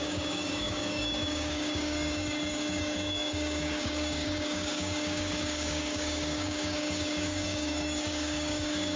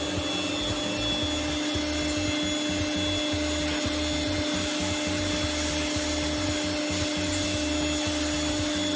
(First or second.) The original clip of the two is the second